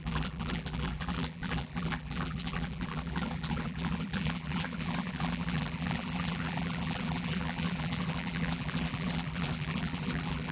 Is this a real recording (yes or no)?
no